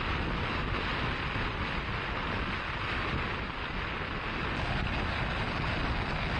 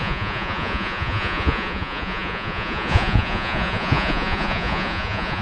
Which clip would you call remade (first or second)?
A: second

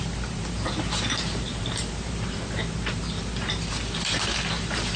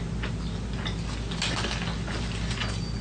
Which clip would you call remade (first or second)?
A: first